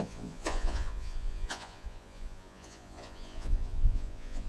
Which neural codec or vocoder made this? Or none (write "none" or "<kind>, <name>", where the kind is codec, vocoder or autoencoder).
vocoder, Vocos